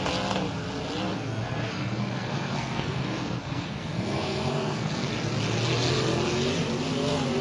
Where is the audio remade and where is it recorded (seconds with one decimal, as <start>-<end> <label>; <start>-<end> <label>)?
0.0-1.1 recorded; 1.1-5.1 remade; 5.1-7.4 recorded

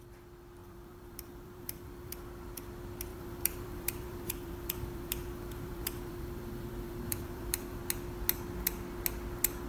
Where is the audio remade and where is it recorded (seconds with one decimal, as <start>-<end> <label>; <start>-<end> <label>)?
0.0-0.6 recorded; 0.6-2.1 remade; 2.1-3.1 recorded; 3.1-7.8 remade; 7.8-9.7 recorded

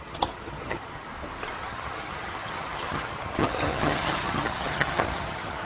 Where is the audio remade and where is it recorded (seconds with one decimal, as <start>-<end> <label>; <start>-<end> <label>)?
0.0-1.1 remade; 1.1-1.6 recorded; 1.6-5.6 remade

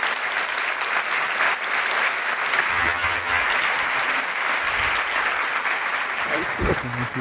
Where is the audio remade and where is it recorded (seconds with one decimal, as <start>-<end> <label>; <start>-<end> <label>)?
0.0-2.7 recorded; 2.7-3.4 remade; 3.4-7.2 recorded